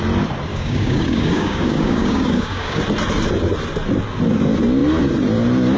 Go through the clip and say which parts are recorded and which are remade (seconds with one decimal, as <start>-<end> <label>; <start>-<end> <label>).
0.0-0.5 recorded; 0.5-2.8 remade; 2.8-5.8 recorded